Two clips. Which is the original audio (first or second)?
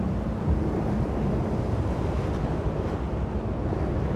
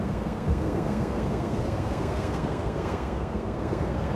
first